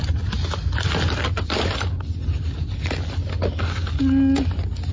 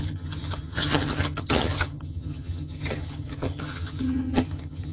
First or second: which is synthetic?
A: second